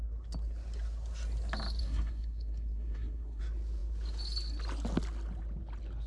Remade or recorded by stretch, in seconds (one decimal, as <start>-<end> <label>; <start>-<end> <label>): 0.0-1.8 recorded; 1.8-3.4 remade; 3.4-6.1 recorded